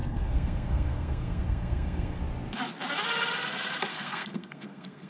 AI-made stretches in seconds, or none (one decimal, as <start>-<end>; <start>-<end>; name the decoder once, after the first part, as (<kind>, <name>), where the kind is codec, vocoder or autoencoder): 0.0-2.2 (codec, SNAC); 3.9-5.1